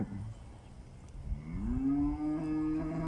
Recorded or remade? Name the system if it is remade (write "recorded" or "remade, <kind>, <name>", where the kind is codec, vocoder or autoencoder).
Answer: recorded